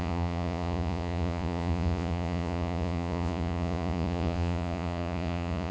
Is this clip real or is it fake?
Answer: fake